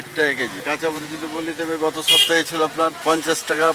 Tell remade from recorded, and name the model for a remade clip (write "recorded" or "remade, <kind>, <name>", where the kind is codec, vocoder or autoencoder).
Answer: remade, vocoder, Vocos